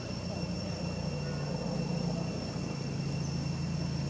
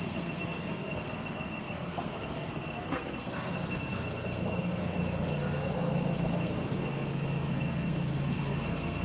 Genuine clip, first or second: first